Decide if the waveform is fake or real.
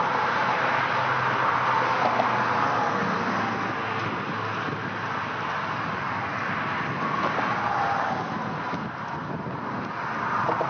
real